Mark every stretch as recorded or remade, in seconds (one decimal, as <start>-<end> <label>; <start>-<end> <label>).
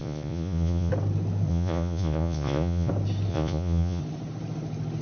0.0-0.9 remade; 0.9-1.5 recorded; 1.5-2.9 remade; 2.9-3.3 recorded; 3.3-4.0 remade; 4.0-5.0 recorded